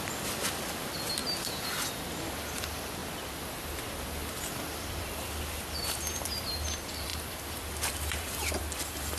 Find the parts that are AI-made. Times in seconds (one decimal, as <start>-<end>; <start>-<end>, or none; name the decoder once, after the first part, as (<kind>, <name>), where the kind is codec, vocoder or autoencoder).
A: 0.0-1.2 (vocoder, BigVGAN v2); 2.2-3.0; 4.4-9.2